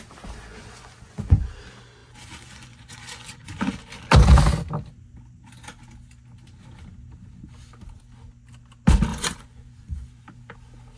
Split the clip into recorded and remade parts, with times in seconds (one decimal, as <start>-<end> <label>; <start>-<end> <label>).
0.0-0.4 recorded; 0.4-1.5 remade; 1.5-2.0 recorded; 2.0-3.8 remade; 3.8-9.1 recorded; 9.1-10.2 remade; 10.2-11.0 recorded